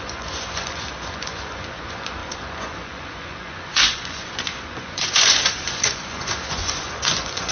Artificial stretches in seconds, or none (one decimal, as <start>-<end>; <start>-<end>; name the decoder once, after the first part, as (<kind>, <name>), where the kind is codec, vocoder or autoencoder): 0.0-7.5 (vocoder, Vocos)